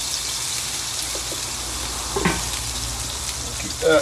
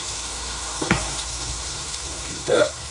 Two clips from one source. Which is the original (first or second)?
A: first